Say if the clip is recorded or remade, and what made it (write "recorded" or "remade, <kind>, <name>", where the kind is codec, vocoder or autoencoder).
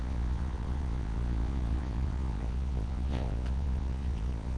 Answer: remade, vocoder, Vocos